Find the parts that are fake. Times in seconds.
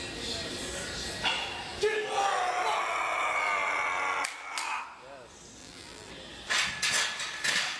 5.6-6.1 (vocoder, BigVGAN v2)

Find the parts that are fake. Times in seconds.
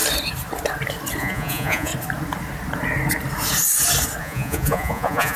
1.2-1.9 (vocoder, Vocos); 4.2-5.4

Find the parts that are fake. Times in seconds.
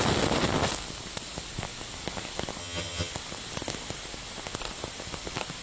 2.6-3.1 (vocoder, HiFi-GAN)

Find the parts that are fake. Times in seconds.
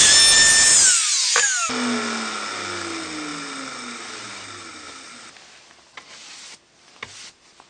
none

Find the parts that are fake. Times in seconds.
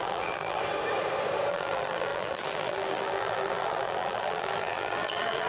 0.0-0.6 (vocoder, BigVGAN v2); 1.5-5.5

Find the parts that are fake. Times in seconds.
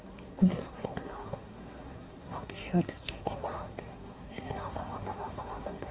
0.0-5.9 (codec, SNAC)